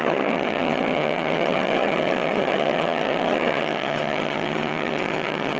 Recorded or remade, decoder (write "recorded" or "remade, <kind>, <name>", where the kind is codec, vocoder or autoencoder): remade, vocoder, HiFi-GAN